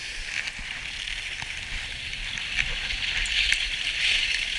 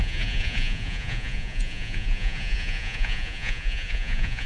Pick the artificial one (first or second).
second